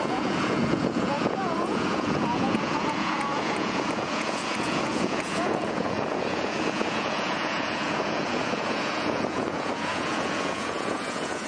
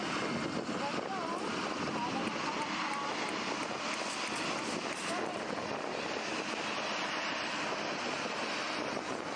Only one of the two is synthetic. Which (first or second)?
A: first